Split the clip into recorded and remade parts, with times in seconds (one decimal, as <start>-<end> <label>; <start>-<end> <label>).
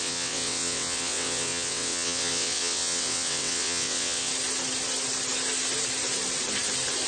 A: 0.0-4.3 remade; 4.3-7.1 recorded